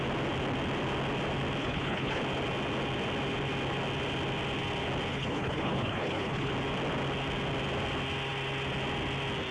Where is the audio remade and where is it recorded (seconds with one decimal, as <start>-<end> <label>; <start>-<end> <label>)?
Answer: 0.0-1.6 recorded; 1.6-2.2 remade; 2.2-5.1 recorded; 5.1-6.5 remade; 6.5-9.5 recorded